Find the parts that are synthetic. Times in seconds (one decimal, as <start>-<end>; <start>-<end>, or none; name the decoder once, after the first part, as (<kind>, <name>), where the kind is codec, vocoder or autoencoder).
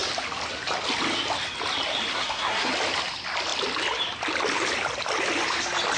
2.1-2.7 (codec, SNAC)